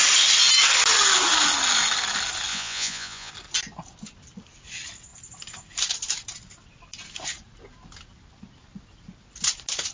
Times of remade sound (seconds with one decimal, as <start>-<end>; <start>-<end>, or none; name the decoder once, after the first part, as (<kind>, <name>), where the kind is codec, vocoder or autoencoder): 2.5-3.3 (vocoder, Vocos)